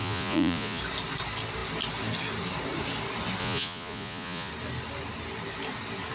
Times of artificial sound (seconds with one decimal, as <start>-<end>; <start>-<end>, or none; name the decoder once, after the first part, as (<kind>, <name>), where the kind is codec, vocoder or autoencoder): 0.0-0.8 (vocoder, Vocos); 3.4-4.5